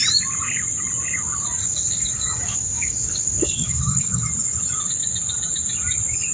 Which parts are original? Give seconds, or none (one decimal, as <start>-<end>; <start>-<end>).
0.0-1.6; 4.2-6.3